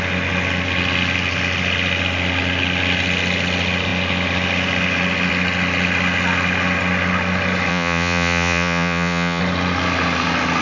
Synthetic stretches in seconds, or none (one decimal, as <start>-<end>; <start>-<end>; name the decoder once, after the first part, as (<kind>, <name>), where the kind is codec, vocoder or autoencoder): 7.7-9.4 (vocoder, Vocos)